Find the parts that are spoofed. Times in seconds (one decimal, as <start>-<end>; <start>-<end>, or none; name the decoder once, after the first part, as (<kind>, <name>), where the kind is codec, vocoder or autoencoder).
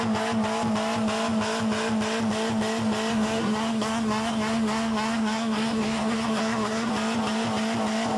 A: 3.1-6.9 (codec, SNAC)